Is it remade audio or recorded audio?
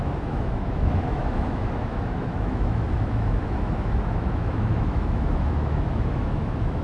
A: remade